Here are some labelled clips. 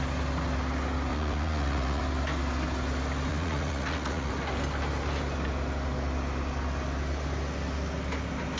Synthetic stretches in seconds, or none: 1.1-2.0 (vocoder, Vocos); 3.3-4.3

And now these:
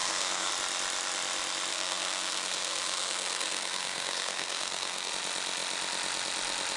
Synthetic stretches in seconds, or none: 0.0-0.5 (codec, SNAC); 1.7-5.1

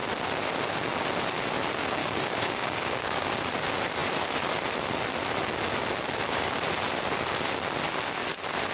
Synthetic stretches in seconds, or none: 2.0-3.3 (codec, DAC)

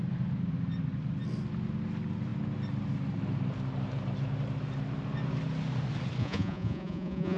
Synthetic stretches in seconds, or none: 6.2-7.4 (vocoder, Vocos)

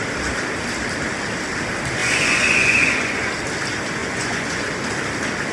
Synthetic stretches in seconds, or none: 2.0-3.3 (vocoder, Vocos); 4.0-4.7

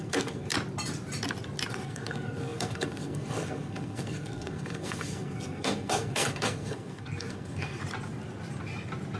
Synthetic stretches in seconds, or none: 0.0-0.5 (codec, SNAC); 1.7-7.8

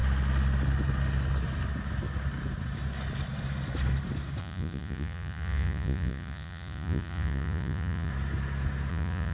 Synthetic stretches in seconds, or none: 4.4-8.1 (vocoder, Vocos); 8.9-9.3

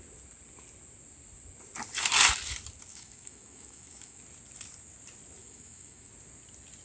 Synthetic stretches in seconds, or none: 2.9-4.2 (autoencoder, DAC-VAE); 5.4-6.1